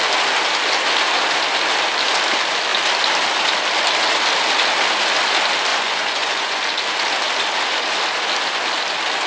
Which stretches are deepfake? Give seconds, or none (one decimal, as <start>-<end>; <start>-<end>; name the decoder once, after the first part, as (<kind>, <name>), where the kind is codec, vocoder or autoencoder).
5.7-6.6 (vocoder, Vocos)